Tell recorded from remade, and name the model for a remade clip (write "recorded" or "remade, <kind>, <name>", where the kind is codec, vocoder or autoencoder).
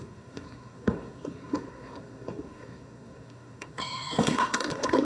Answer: remade, codec, SNAC